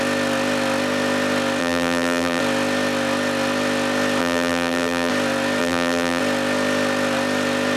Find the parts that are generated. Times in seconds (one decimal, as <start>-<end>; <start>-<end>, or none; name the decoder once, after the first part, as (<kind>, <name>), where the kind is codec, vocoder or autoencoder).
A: 1.6-2.4 (vocoder, BigVGAN v2); 4.2-5.1; 5.6-6.2